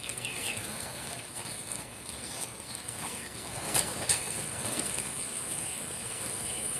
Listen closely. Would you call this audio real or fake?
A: fake